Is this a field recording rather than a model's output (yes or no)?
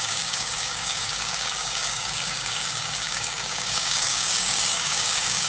no